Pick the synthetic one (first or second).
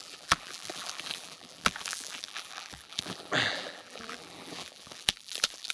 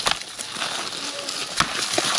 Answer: first